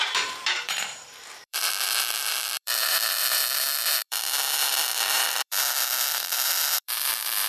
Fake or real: fake